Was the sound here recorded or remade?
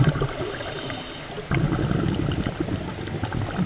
recorded